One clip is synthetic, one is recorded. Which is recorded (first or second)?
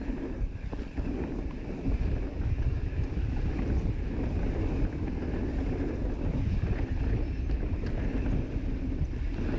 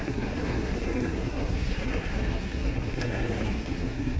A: first